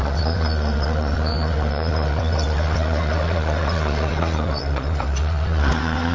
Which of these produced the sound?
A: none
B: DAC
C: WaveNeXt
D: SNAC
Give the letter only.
C